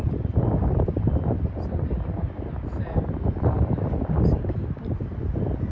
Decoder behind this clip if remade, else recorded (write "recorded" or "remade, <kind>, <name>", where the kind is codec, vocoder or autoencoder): remade, vocoder, BigVGAN v2